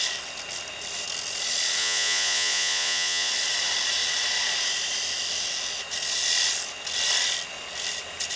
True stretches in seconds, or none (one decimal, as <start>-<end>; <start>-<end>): 0.0-1.8; 3.3-8.4